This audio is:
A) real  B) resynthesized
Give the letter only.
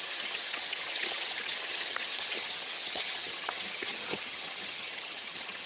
B